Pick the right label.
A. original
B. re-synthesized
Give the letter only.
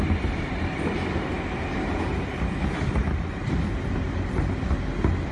A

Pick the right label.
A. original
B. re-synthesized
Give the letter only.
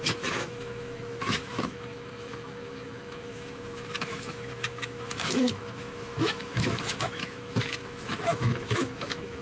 B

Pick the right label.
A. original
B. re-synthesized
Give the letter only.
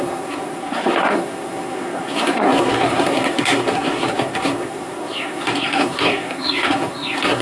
B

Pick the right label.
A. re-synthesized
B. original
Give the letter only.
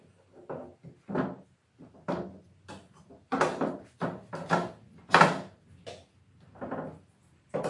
B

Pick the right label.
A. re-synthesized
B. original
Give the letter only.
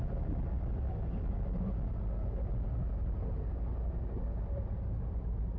B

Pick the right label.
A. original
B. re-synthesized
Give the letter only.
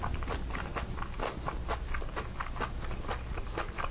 A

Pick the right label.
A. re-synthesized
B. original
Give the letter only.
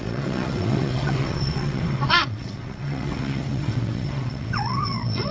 A